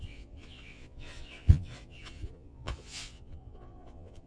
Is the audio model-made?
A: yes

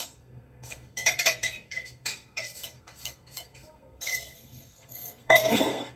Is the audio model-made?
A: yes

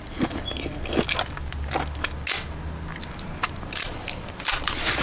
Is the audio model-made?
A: no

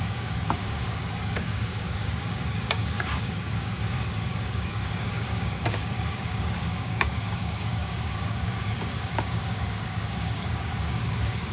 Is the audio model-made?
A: yes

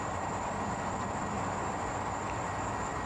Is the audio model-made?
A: no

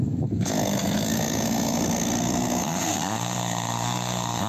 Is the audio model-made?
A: yes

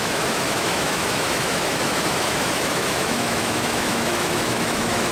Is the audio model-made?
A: yes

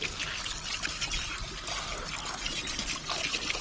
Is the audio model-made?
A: no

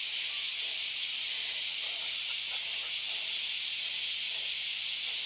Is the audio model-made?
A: no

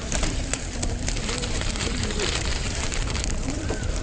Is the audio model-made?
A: yes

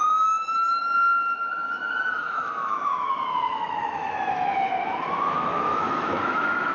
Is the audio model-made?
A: yes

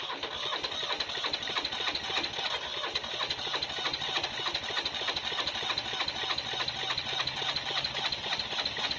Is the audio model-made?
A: no